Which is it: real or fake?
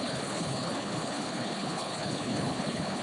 fake